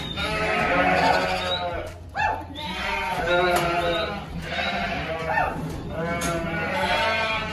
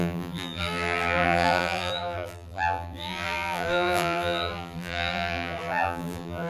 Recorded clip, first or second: first